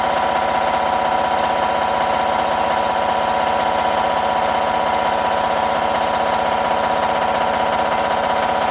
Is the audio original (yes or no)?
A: yes